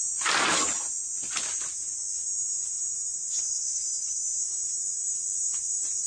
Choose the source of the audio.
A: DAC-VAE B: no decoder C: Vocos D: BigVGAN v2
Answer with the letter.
B